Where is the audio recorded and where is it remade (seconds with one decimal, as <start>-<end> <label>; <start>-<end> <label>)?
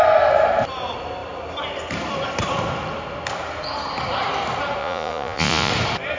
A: 0.0-4.8 recorded; 4.8-5.7 remade; 5.7-6.2 recorded